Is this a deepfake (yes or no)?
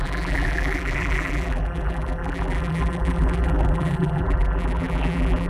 yes